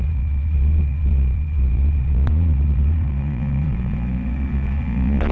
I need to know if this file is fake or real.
fake